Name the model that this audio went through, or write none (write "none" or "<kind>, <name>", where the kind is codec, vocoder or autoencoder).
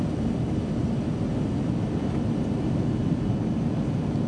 none